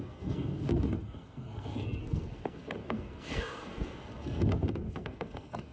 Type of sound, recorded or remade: remade